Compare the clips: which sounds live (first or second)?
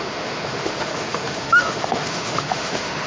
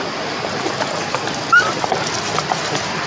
second